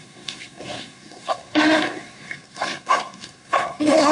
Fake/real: fake